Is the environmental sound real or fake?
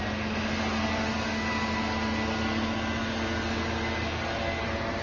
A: real